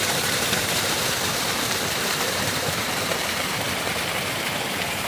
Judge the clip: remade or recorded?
remade